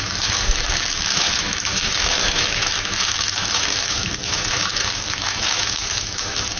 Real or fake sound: fake